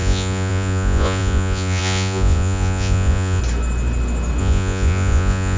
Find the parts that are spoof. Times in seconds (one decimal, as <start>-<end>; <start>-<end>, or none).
0.0-3.4; 4.4-5.6